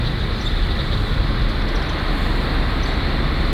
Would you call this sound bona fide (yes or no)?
yes